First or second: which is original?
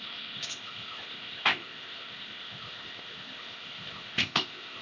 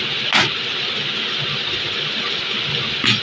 second